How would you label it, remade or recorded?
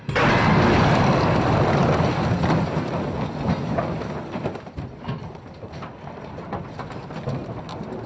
recorded